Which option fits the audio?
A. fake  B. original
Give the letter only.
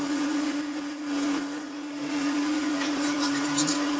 A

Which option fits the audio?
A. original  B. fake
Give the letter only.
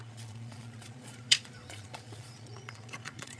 B